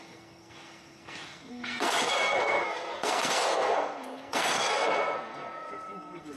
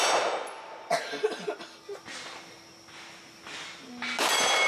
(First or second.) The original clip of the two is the second